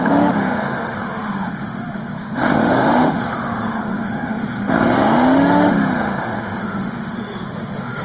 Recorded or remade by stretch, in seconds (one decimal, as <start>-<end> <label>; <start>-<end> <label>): 0.0-8.0 remade